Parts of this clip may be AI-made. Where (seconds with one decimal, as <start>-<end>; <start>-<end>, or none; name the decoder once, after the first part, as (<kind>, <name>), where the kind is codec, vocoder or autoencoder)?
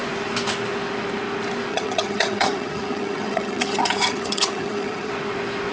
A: 1.7-5.1 (vocoder, HiFi-GAN)